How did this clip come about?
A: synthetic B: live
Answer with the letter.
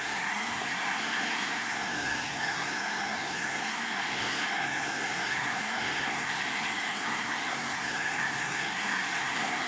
A